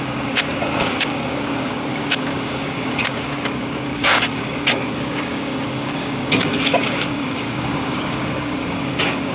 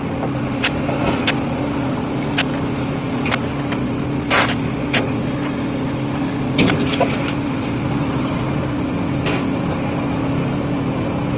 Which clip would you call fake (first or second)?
first